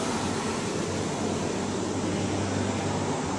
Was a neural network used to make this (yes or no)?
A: no